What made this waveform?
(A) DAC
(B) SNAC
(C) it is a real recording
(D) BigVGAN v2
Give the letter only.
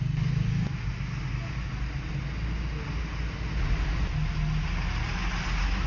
C